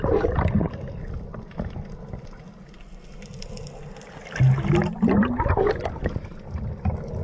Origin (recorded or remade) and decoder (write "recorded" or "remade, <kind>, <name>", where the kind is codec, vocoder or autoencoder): recorded